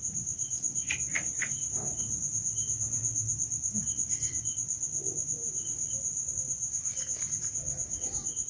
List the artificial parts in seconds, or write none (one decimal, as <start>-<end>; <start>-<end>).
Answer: none